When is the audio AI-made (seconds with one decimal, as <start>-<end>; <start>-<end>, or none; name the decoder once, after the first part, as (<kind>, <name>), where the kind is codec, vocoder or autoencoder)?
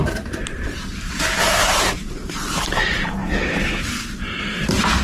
0.0-3.2 (vocoder, BigVGAN v2); 4.4-5.0